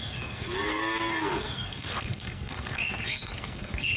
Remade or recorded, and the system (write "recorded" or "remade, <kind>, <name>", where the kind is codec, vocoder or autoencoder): remade, codec, SNAC